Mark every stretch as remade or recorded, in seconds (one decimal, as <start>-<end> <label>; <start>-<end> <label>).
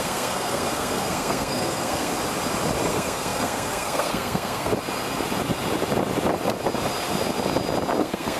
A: 0.0-2.1 remade; 2.1-2.9 recorded; 2.9-4.7 remade; 4.7-8.0 recorded; 8.0-8.4 remade